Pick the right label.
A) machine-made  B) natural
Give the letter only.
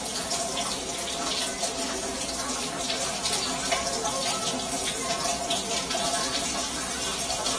B